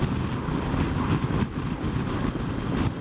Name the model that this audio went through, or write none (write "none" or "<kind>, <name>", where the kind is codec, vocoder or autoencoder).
none